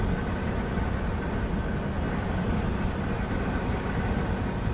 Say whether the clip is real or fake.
real